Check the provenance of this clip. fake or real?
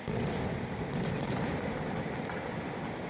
real